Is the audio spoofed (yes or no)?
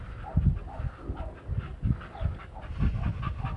no